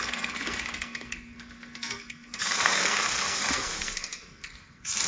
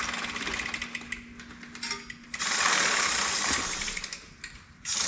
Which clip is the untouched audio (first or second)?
second